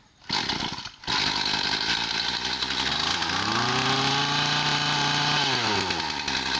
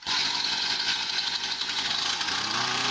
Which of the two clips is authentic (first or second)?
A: first